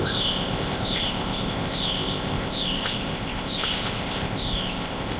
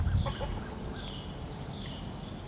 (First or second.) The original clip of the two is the second